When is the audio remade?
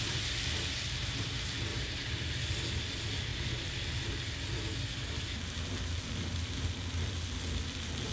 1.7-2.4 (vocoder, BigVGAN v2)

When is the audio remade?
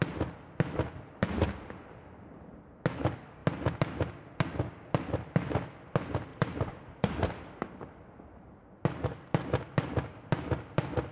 6.3-7.5 (vocoder, BigVGAN v2)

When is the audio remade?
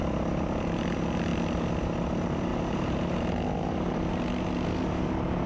2.5-3.3 (vocoder, BigVGAN v2)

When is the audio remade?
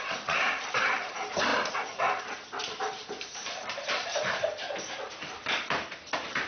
0.0-6.5 (vocoder, BigVGAN v2)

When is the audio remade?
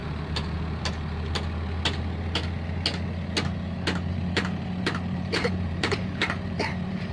4.1-7.1 (vocoder, BigVGAN v2)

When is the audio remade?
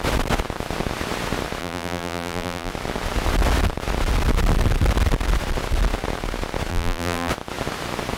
1.6-2.7 (vocoder, BigVGAN v2); 6.7-7.3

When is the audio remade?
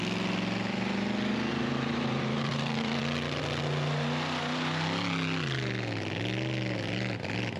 1.5-3.0 (vocoder, BigVGAN v2)